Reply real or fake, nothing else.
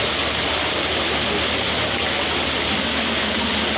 real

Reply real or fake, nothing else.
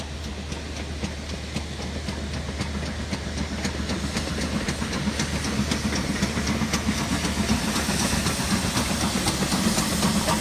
real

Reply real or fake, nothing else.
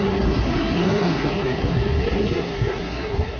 fake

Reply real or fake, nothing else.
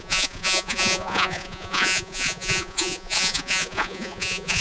fake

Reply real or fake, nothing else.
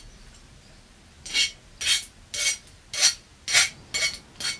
real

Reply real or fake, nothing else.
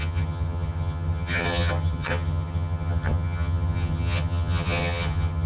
fake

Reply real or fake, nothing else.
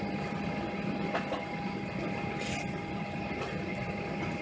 real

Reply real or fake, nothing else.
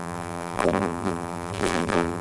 fake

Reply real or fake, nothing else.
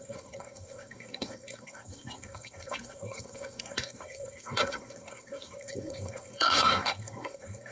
fake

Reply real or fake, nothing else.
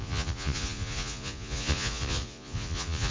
fake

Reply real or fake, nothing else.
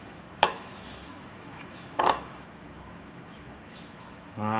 fake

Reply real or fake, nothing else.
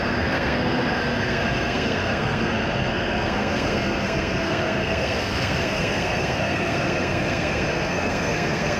fake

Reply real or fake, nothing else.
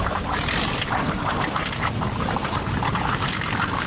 fake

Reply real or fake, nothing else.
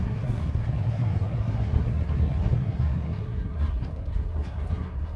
fake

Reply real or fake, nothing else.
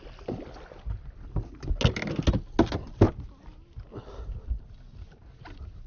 real